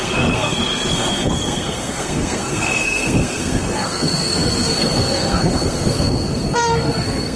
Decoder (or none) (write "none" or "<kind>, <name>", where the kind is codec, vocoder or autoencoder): codec, SNAC